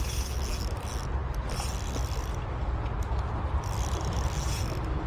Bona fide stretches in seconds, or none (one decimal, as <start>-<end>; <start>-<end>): 0.0-5.1